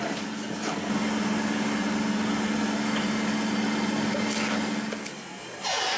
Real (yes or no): yes